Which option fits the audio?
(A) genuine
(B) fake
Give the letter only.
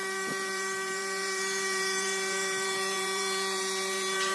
B